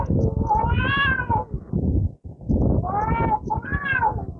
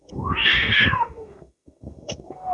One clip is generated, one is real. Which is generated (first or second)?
second